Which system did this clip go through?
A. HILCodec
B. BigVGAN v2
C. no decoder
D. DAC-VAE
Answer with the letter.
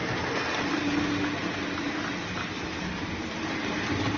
C